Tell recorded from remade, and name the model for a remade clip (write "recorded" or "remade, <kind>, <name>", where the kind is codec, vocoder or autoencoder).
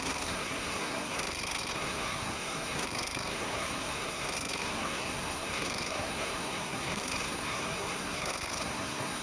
remade, codec, SNAC